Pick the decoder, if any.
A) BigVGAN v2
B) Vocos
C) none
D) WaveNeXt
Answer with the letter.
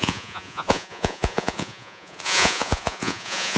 B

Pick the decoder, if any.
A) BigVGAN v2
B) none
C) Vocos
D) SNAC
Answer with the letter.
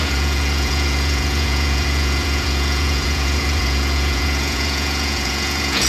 C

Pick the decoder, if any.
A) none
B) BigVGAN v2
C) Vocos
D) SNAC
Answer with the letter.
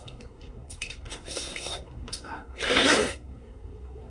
D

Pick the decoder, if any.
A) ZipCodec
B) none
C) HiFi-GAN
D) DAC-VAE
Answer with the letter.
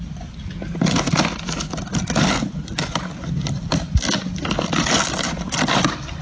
B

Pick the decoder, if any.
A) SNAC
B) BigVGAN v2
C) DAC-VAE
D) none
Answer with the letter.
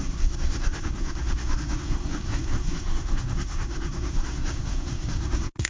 A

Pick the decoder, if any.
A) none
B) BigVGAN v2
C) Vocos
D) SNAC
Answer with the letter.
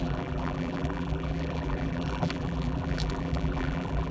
B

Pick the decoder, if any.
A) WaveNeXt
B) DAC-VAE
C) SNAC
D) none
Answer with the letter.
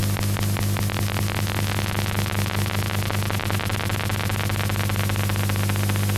D